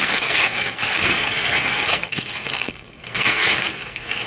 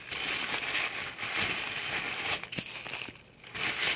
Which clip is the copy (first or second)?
first